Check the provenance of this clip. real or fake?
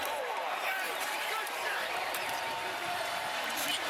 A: fake